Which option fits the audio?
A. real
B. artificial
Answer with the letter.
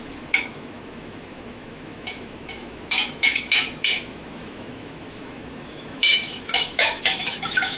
B